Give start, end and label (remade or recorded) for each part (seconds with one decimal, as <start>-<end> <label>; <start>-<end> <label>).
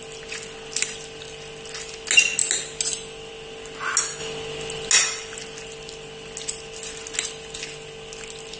0.0-8.6 recorded